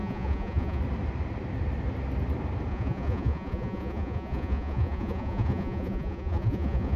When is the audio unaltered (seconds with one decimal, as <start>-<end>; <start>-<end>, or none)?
0.8-2.7

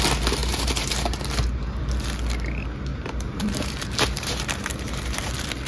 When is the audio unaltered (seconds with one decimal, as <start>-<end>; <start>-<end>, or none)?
0.0-0.4; 1.8-2.9; 5.3-5.7

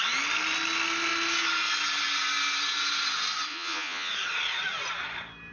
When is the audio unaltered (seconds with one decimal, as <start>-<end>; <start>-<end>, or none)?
0.0-3.5; 4.1-5.5

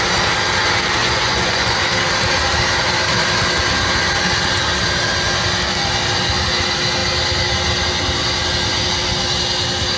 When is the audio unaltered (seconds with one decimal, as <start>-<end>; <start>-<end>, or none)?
0.0-1.0; 1.8-10.0

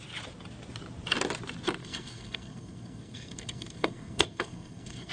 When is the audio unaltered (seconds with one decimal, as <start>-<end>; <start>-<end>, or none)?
0.0-1.8

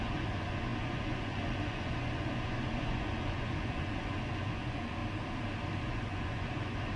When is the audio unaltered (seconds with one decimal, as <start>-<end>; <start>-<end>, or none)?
5.0-5.8

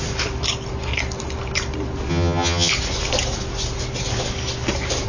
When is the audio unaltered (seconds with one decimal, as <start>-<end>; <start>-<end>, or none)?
0.0-2.1; 2.7-5.1